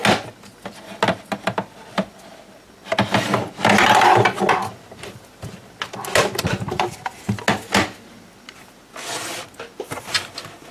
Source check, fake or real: real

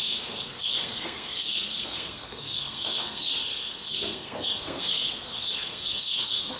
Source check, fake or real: fake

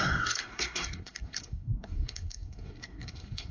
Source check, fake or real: fake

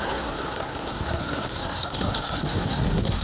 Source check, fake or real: fake